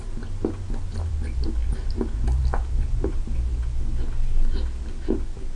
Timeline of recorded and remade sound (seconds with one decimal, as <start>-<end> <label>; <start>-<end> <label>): 0.0-5.6 recorded